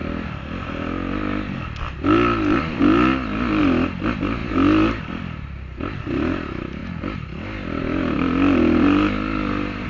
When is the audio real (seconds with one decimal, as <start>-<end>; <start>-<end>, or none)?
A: 0.0-9.9